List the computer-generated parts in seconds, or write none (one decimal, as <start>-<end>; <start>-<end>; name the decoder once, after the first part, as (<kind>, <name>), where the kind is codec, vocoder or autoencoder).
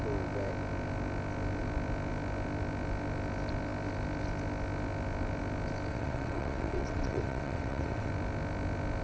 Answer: 5.9-8.1 (vocoder, WaveNeXt)